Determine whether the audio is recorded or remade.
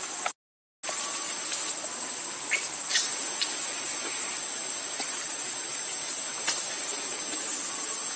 recorded